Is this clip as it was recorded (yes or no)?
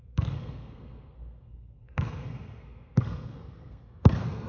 no